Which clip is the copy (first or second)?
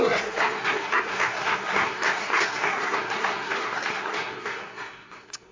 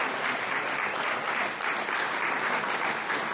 first